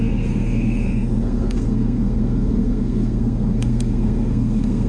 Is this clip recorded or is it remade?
remade